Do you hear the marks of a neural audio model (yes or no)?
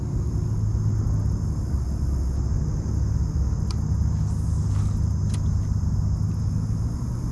no